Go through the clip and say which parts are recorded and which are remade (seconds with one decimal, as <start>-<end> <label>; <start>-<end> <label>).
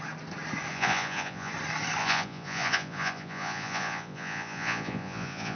0.0-0.7 recorded; 0.7-1.5 remade; 1.5-2.0 recorded; 2.0-5.6 remade